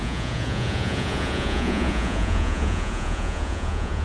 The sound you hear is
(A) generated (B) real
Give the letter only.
A